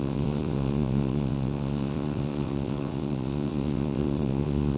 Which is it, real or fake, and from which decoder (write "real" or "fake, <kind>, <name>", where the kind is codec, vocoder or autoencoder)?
fake, vocoder, WaveNeXt